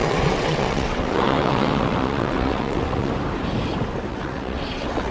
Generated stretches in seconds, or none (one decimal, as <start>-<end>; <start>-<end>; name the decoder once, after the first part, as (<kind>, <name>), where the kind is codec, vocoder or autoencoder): 0.0-3.1 (vocoder, WaveNeXt); 4.1-5.1